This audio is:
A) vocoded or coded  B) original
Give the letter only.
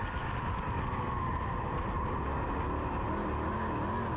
B